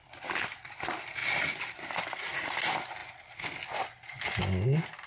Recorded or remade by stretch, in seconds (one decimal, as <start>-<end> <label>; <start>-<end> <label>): 0.0-5.1 recorded